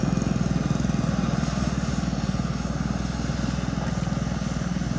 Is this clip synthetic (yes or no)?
no